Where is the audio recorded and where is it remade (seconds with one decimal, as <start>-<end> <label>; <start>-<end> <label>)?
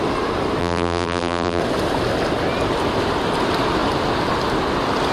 0.0-0.6 recorded; 0.6-1.6 remade; 1.6-5.1 recorded